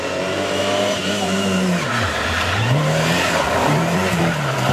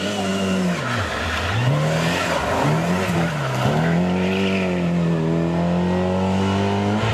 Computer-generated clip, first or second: first